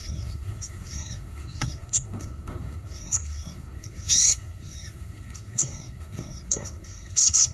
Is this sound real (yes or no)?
no